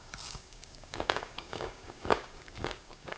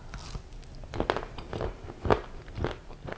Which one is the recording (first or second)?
second